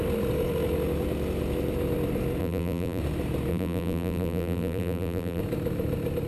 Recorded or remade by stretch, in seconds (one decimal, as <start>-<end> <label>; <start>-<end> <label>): 0.0-2.4 recorded; 2.4-3.0 remade; 3.0-3.5 recorded; 3.5-5.4 remade; 5.4-6.3 recorded